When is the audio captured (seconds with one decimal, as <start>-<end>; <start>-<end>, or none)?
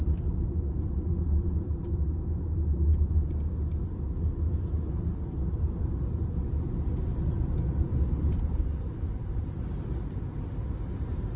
0.0-11.4